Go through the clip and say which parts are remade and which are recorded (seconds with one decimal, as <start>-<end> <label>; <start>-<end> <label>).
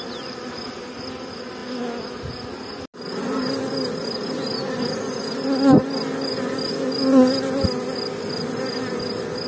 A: 0.0-9.5 recorded